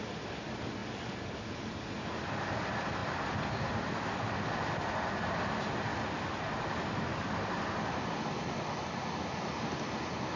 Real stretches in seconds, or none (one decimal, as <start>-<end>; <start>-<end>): 0.0-10.4